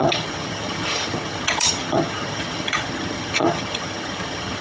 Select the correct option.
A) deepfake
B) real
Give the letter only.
A